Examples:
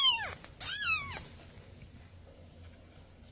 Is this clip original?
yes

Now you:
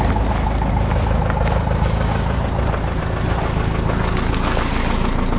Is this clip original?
yes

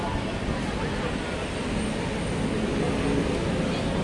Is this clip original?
yes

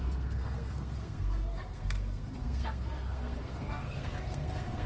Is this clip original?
no